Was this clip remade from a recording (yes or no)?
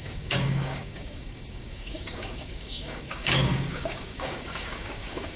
yes